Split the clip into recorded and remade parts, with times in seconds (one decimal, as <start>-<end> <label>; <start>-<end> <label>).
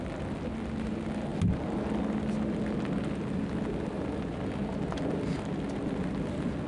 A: 0.0-6.7 recorded